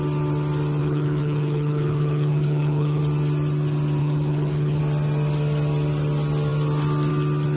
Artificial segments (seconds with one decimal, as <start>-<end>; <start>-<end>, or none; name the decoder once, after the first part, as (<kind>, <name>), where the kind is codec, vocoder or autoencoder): 0.8-3.0 (codec, HILCodec); 4.0-4.8